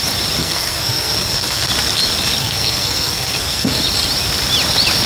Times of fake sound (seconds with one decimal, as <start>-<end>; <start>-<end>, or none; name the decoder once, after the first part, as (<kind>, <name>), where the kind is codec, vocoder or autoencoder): 0.4-1.7 (codec, SNAC); 2.4-3.8